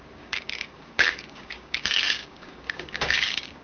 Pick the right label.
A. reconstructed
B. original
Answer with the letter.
A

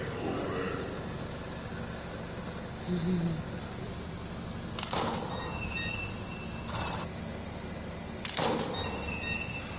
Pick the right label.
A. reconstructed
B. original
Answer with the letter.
B